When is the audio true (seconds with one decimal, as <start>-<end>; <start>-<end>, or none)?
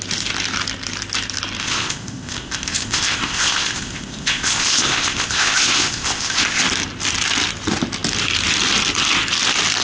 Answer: 0.0-1.6; 6.6-9.8